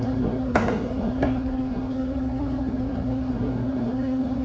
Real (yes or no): no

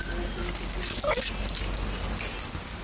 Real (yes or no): yes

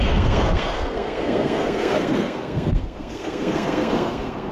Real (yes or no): no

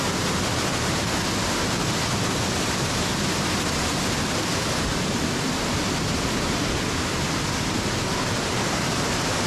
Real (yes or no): yes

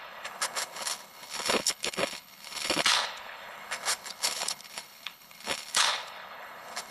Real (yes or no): no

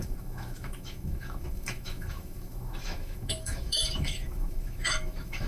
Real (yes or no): no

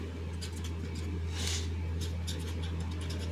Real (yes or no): yes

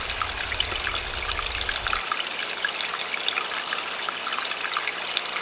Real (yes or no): yes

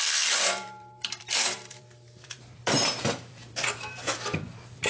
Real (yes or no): no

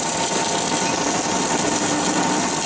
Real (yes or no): yes